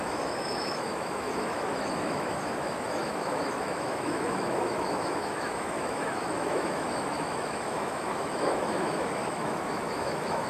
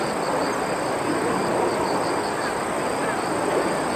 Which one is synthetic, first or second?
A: first